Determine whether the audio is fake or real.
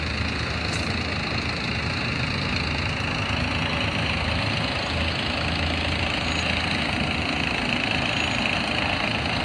real